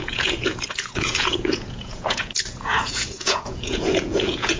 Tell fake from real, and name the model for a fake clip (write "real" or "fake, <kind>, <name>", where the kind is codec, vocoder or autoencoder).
fake, vocoder, Vocos